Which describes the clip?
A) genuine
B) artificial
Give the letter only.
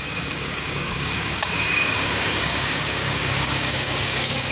B